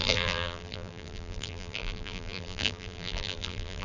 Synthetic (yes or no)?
yes